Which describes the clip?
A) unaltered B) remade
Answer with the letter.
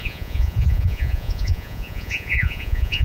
B